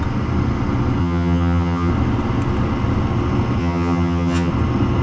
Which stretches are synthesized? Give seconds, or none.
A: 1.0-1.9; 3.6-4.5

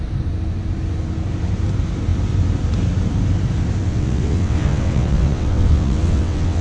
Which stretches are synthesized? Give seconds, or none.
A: 3.8-6.6

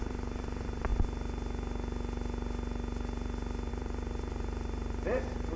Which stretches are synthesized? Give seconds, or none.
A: 0.0-0.9; 3.7-5.6

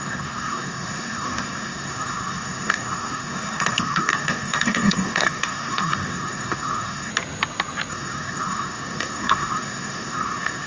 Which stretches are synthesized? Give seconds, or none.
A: 0.0-7.1; 7.9-10.7

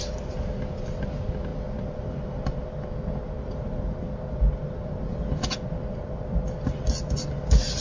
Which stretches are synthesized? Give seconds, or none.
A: none

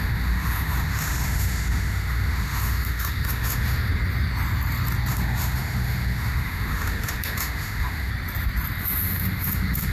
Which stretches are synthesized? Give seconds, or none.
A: 0.0-3.9; 5.1-8.1; 8.8-9.9